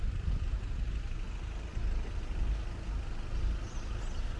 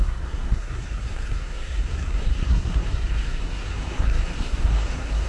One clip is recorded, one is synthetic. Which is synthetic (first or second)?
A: second